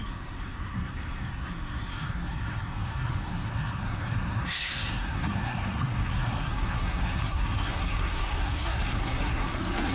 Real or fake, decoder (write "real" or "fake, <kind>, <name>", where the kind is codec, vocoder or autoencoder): fake, codec, SNAC